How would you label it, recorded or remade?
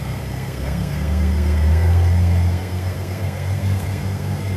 remade